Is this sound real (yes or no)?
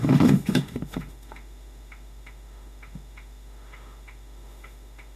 no